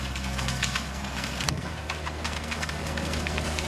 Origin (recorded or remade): remade